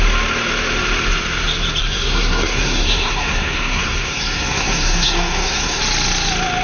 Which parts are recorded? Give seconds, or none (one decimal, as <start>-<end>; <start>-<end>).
0.0-1.8; 5.8-6.6